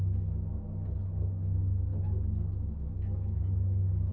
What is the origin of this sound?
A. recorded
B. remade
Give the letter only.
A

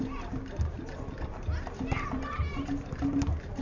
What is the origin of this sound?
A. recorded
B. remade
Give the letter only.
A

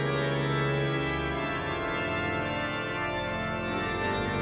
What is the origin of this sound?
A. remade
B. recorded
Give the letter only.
B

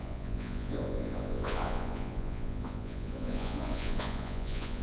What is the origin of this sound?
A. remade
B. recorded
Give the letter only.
A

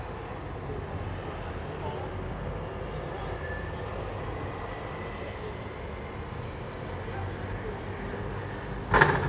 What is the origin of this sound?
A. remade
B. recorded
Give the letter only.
B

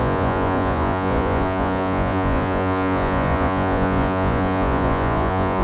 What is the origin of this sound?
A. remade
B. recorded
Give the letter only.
A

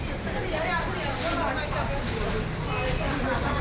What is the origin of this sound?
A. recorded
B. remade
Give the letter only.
A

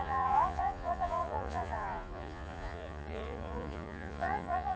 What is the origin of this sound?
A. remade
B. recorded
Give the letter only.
A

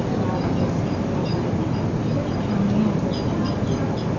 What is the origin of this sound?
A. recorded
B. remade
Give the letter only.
A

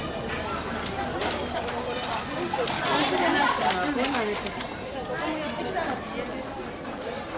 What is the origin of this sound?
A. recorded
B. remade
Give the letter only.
A